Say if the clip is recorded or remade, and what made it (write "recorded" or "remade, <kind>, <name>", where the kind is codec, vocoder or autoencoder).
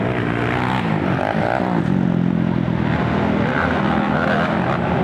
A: recorded